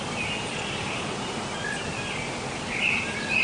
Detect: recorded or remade recorded